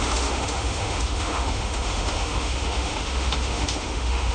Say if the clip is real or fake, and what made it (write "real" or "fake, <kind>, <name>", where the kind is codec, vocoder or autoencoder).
fake, autoencoder, DAC-VAE